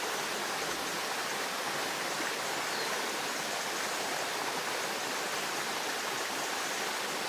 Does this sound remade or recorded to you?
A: recorded